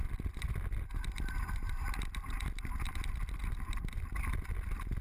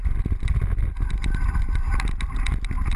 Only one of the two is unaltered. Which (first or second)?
second